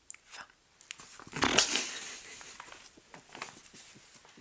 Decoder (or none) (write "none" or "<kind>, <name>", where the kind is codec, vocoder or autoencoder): none